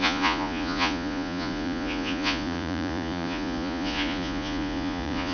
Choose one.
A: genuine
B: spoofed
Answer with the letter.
B